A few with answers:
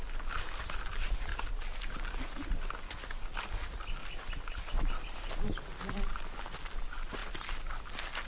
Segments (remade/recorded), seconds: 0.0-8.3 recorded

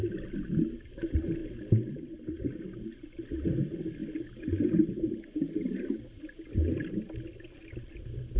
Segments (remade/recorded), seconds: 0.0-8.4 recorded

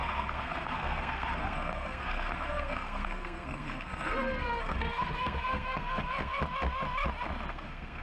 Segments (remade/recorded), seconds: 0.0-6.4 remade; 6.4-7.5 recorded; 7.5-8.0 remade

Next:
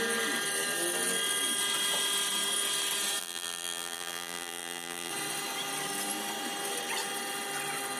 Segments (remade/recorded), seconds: 0.0-3.2 recorded; 3.2-5.1 remade; 5.1-8.0 recorded